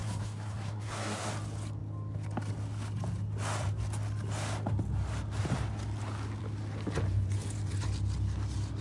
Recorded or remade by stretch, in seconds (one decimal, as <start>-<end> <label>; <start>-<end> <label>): 0.0-1.3 remade; 1.3-8.8 recorded